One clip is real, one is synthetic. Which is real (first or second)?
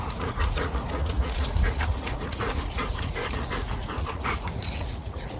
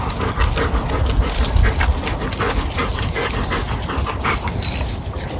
second